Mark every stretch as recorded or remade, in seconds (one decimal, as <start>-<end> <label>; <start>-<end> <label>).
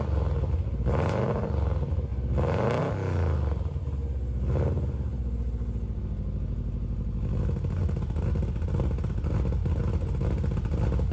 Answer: 0.0-11.1 recorded